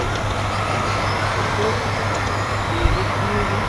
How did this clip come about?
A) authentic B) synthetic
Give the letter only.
A